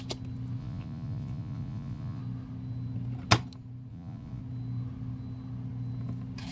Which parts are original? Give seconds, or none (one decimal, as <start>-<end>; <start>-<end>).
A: 0.0-0.6; 2.2-3.9; 4.4-6.5